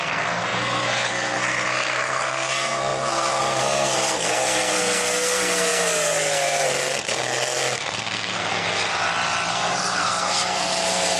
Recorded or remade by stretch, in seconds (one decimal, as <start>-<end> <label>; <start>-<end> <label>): 0.0-8.9 remade; 8.9-9.5 recorded; 9.5-11.2 remade